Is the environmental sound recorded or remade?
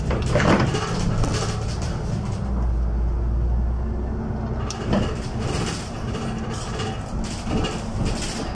recorded